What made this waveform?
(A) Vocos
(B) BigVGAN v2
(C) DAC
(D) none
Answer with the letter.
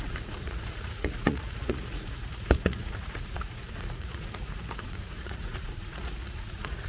A